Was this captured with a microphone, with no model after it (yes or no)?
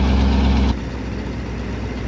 yes